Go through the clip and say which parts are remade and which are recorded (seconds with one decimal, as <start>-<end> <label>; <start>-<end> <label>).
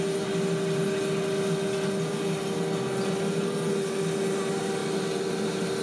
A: 0.0-5.8 recorded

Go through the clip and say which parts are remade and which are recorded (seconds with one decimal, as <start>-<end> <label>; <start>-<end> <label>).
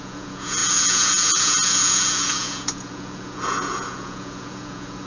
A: 0.0-5.1 remade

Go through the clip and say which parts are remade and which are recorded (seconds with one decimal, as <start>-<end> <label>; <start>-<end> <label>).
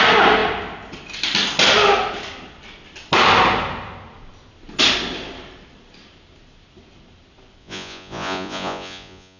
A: 0.0-7.6 recorded; 7.6-9.4 remade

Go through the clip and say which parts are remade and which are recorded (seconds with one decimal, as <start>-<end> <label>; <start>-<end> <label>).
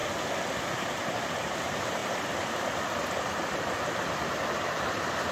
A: 0.0-0.6 recorded; 0.6-2.0 remade; 2.0-4.1 recorded; 4.1-5.3 remade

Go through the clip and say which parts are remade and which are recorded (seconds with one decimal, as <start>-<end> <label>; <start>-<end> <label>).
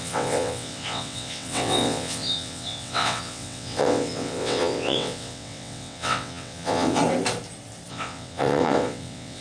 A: 0.0-7.0 remade; 7.0-7.9 recorded; 7.9-9.4 remade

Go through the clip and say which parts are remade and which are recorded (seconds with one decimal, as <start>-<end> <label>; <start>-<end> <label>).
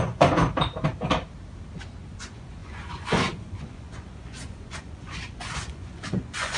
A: 0.0-0.4 remade; 0.4-2.2 recorded; 2.2-6.6 remade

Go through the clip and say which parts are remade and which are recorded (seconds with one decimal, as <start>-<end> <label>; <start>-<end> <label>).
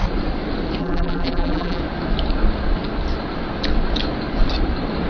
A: 0.0-0.8 recorded; 0.8-1.8 remade; 1.8-5.1 recorded